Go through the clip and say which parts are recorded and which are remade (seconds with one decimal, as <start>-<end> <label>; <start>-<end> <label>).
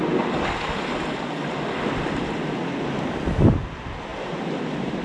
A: 0.0-4.1 recorded; 4.1-5.0 remade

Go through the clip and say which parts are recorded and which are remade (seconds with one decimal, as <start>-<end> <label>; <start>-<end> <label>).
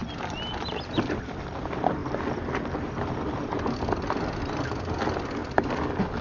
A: 0.0-6.2 recorded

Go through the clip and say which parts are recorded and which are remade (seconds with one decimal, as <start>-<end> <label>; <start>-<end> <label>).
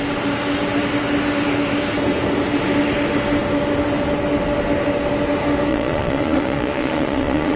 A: 0.0-5.7 recorded; 5.7-7.6 remade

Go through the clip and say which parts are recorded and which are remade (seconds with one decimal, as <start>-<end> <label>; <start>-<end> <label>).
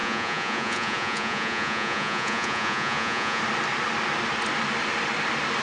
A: 0.0-3.4 remade; 3.4-5.6 recorded